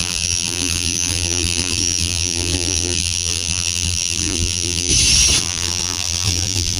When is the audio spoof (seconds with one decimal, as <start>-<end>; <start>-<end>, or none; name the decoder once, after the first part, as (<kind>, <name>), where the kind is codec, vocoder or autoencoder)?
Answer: 0.0-4.9 (vocoder, BigVGAN v2); 5.4-6.8